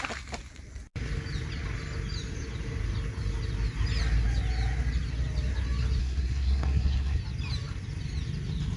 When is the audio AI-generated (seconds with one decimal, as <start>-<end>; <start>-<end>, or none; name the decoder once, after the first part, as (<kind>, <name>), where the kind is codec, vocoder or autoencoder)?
6.0-7.2 (codec, SNAC)